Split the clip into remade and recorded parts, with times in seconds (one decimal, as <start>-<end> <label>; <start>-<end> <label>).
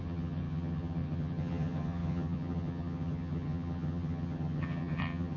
0.0-5.4 remade